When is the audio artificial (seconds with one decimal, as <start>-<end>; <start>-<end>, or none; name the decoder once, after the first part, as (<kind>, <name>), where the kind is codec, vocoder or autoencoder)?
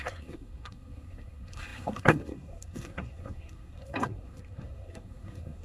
0.0-5.6 (codec, SNAC)